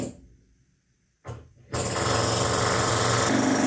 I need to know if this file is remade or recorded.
recorded